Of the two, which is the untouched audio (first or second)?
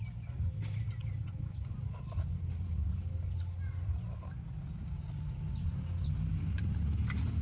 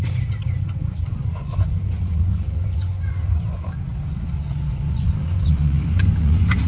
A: first